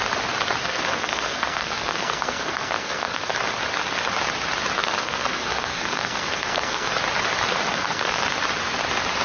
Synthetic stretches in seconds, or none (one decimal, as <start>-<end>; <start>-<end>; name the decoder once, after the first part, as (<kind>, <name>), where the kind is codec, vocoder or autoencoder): 0.6-3.3 (codec, SNAC); 4.8-6.9; 7.7-8.2